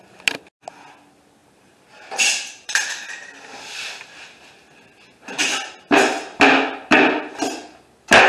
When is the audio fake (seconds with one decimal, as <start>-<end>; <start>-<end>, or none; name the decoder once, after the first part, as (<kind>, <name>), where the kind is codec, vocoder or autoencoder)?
1.4-2.9 (vocoder, BigVGAN v2)